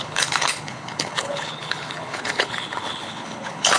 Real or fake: fake